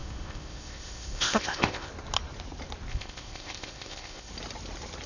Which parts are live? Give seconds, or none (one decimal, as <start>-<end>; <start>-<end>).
1.9-2.9; 4.3-5.1